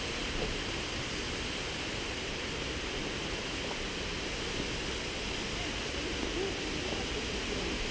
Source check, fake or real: real